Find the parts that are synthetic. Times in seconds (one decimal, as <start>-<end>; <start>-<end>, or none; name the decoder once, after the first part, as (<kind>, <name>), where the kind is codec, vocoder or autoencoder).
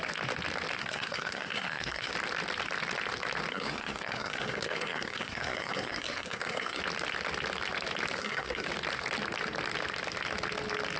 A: 0.8-2.1 (codec, SNAC); 3.5-6.8; 8.2-8.7